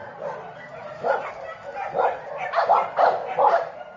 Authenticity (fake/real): real